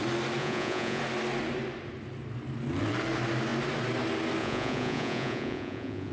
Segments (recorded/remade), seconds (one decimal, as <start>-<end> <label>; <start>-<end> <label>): 0.0-0.4 recorded; 0.4-1.0 remade; 1.0-4.4 recorded; 4.4-6.1 remade